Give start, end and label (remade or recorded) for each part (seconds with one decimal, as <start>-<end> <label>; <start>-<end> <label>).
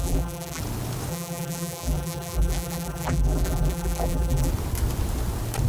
0.0-0.6 remade; 0.6-1.1 recorded; 1.1-4.5 remade; 4.5-5.7 recorded